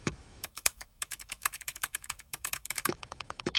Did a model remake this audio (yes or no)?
yes